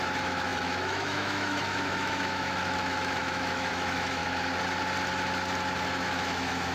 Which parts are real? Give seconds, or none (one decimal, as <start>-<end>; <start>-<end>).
4.2-5.9